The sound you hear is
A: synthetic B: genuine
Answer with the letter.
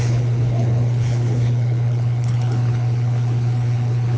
A